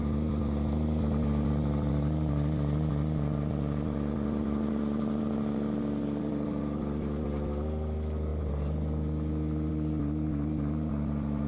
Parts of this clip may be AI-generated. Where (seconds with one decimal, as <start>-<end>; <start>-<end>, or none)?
none